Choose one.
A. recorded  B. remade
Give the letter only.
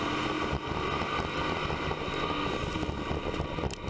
A